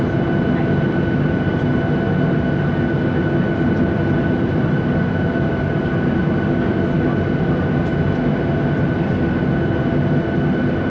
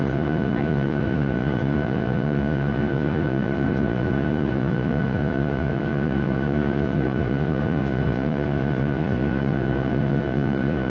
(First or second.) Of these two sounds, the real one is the first